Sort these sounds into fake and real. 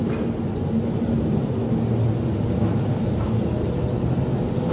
real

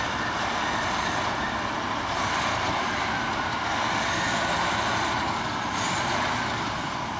real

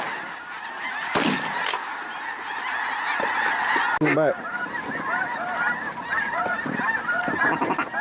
real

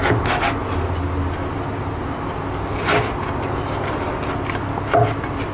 real